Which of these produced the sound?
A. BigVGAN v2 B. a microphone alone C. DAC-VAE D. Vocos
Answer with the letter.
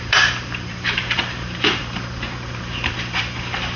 A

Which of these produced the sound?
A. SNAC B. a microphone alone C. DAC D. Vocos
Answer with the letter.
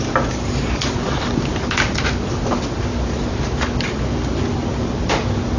B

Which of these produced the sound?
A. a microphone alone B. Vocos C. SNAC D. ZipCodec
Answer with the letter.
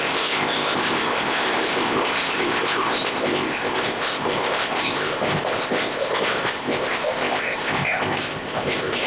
D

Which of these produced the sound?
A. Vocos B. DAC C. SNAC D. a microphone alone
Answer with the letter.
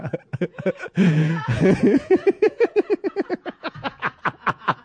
A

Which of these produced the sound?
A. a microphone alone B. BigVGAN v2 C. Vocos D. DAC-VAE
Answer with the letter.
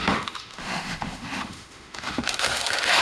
D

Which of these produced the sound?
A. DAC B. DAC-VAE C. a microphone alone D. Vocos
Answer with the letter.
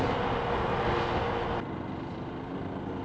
C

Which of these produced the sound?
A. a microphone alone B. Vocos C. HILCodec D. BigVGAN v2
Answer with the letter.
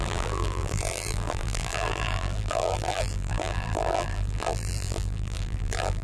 D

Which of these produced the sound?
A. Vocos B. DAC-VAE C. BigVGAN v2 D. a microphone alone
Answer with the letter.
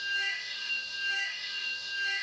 B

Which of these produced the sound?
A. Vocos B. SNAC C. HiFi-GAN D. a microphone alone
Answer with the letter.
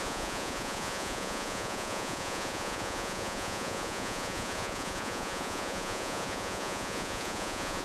A